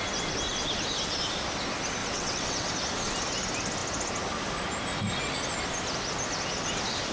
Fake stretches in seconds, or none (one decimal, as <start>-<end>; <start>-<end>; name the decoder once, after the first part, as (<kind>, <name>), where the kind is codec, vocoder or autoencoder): 2.0-2.7 (vocoder, WaveNeXt)